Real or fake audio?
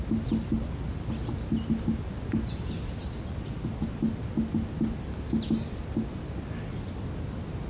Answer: real